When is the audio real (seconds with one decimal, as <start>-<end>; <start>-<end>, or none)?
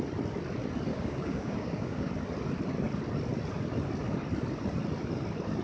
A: 0.0-0.9; 2.1-5.6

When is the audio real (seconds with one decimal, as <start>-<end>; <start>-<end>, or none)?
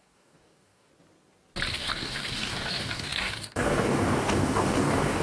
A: 0.9-1.7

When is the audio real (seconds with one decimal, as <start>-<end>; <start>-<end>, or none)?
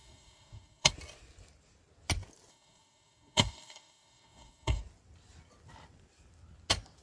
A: 0.9-2.5; 4.8-7.0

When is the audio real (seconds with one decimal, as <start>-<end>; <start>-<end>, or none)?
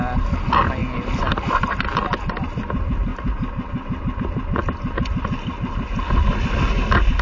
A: 0.0-7.2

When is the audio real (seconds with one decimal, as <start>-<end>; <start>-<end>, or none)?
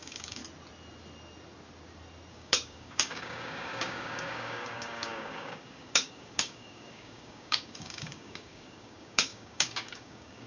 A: 0.4-2.3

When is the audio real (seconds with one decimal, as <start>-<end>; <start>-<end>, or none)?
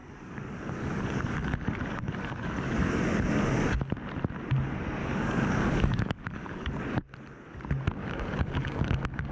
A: 2.9-5.0; 6.8-8.0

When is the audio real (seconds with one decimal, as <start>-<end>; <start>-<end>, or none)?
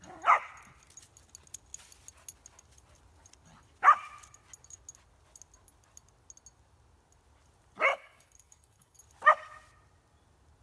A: 0.0-7.9; 9.0-10.6